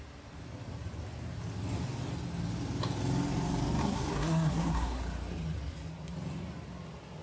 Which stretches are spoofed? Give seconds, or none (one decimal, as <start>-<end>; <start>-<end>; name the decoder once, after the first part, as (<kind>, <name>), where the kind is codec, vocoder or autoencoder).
3.8-5.0 (codec, SNAC)